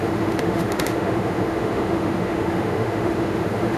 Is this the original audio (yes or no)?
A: no